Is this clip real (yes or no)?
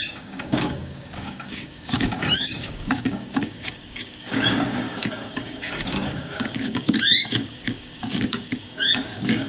no